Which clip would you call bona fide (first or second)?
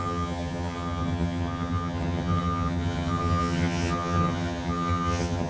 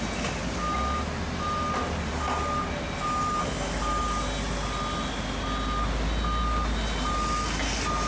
second